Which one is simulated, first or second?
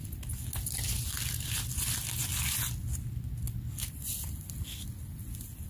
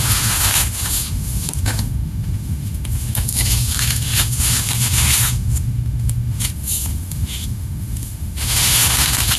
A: second